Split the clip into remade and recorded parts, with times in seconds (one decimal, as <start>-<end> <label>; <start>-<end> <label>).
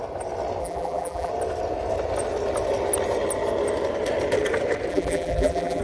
0.0-0.6 recorded; 0.6-1.3 remade; 1.3-4.9 recorded; 4.9-5.8 remade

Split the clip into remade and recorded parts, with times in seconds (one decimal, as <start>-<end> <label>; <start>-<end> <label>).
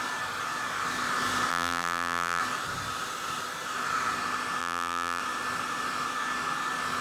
0.0-1.5 recorded; 1.5-2.4 remade; 2.4-4.6 recorded; 4.6-5.2 remade; 5.2-7.0 recorded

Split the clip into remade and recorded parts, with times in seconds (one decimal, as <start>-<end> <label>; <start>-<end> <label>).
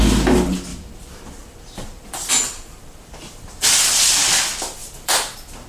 0.0-0.7 recorded; 0.7-4.1 remade; 4.1-4.8 recorded; 4.8-5.7 remade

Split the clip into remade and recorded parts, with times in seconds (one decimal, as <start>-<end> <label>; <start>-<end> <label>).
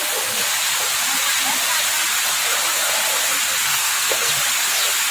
0.0-3.7 recorded; 3.7-4.3 remade; 4.3-5.1 recorded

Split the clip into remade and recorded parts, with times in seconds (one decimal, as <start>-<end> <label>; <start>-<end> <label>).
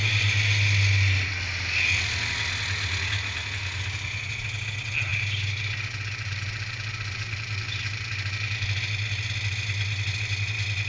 0.0-10.9 recorded